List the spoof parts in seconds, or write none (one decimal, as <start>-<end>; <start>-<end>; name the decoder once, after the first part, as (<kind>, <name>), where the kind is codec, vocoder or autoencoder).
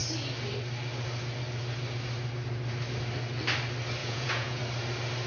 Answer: 4.0-4.6 (vocoder, Vocos)